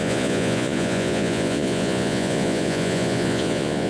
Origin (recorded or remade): remade